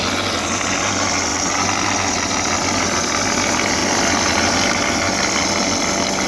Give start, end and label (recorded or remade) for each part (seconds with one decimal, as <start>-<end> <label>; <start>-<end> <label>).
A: 0.0-6.3 recorded